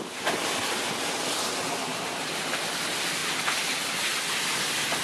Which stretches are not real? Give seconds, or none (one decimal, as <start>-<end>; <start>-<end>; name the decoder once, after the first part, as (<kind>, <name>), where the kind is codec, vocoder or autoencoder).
1.9-2.5 (vocoder, BigVGAN v2)